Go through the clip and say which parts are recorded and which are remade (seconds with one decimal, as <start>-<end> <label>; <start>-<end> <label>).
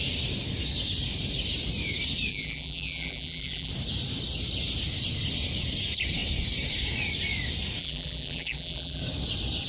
0.0-2.3 recorded; 2.3-3.7 remade; 3.7-7.8 recorded; 7.8-9.0 remade; 9.0-9.7 recorded